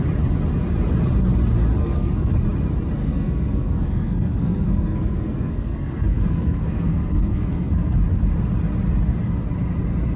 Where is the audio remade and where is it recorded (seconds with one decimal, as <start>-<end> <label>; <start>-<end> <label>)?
0.0-1.8 recorded; 1.8-2.3 remade; 2.3-3.0 recorded; 3.0-7.9 remade; 7.9-10.2 recorded